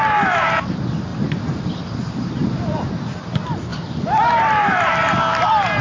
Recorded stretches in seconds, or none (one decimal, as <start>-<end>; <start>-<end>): 0.0-1.1; 3.2-3.7; 5.2-5.8